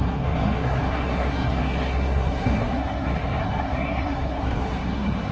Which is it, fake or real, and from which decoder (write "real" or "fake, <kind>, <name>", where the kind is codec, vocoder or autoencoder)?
fake, codec, SNAC